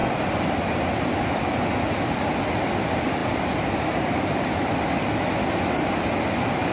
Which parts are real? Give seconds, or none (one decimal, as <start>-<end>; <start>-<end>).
0.0-6.7